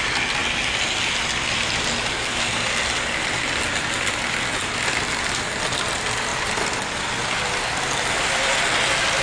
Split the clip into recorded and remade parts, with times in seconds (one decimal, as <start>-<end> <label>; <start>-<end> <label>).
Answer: 0.0-9.2 recorded